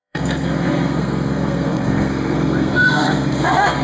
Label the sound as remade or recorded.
remade